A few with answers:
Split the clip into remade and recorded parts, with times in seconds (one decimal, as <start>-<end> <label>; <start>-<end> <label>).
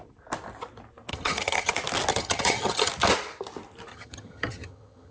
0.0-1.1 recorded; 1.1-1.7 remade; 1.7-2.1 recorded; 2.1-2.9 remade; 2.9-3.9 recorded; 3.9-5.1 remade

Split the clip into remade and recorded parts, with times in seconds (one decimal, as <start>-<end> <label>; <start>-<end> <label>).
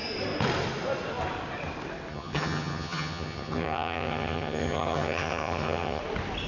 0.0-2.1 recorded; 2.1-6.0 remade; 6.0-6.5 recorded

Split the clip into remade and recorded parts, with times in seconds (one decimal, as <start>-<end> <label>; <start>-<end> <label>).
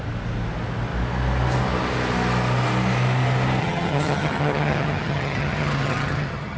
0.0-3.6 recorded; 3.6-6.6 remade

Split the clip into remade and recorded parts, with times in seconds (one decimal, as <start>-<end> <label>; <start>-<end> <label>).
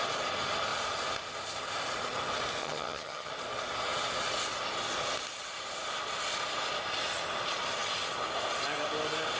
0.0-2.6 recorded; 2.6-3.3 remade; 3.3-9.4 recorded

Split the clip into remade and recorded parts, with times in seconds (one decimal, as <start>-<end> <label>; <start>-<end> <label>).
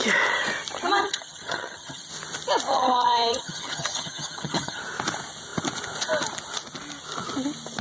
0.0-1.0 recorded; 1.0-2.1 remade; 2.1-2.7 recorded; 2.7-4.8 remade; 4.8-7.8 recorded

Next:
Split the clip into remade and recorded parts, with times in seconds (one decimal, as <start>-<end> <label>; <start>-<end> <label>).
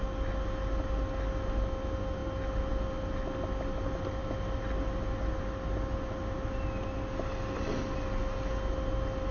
0.0-9.3 recorded